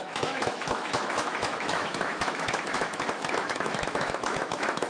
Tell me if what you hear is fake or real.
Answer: fake